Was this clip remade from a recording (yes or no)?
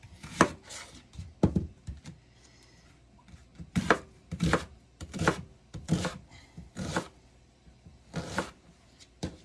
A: yes